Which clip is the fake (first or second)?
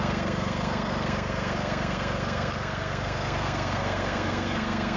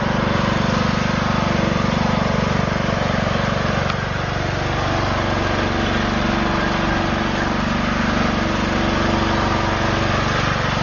first